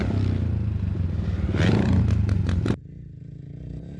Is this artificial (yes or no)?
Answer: no